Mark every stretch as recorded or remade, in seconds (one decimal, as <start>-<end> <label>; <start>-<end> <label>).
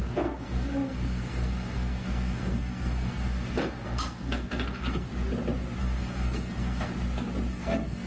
0.0-5.1 remade; 5.1-5.8 recorded; 5.8-6.9 remade; 6.9-7.5 recorded; 7.5-8.1 remade